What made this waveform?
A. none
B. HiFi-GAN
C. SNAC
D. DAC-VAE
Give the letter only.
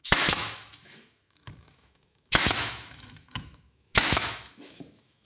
D